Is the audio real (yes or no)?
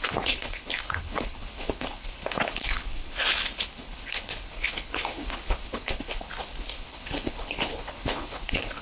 no